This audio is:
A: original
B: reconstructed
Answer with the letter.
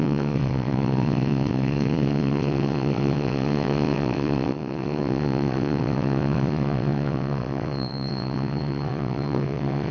B